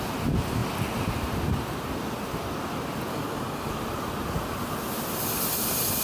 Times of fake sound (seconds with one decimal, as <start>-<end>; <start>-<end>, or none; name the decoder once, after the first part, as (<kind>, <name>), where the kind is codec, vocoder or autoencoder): 3.1-3.7 (codec, DAC)